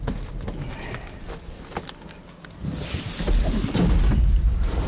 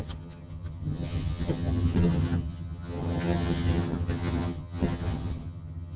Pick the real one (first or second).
first